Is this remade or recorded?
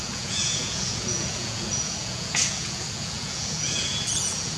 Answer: remade